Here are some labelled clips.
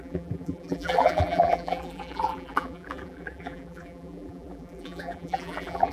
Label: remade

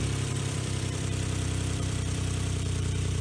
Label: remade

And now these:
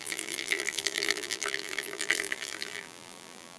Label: remade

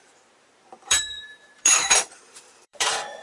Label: remade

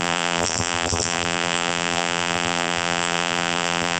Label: remade